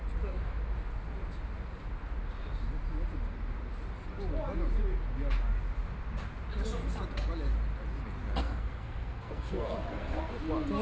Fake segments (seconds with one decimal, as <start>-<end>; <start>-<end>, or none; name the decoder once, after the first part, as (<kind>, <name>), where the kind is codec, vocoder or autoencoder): 8.4-10.3 (codec, SNAC)